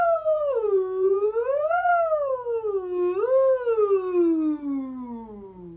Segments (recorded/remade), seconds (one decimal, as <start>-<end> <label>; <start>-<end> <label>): 0.0-1.9 remade; 1.9-5.8 recorded